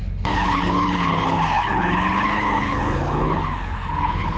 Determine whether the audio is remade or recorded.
remade